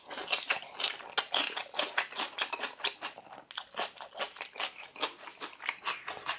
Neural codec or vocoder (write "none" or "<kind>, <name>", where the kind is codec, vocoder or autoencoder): none